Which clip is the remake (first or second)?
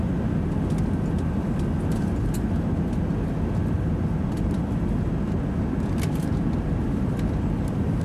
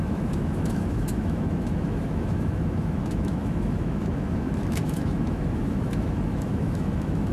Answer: second